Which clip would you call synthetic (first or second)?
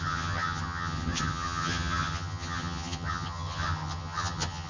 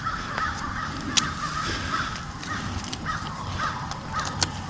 first